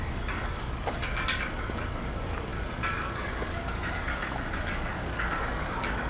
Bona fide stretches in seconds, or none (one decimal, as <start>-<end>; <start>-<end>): none